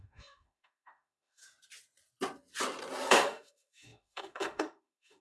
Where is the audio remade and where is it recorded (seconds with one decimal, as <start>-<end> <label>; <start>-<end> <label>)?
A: 0.0-1.4 remade; 1.4-3.1 recorded; 3.1-5.2 remade